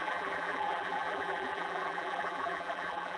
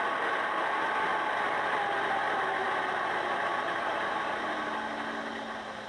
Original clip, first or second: second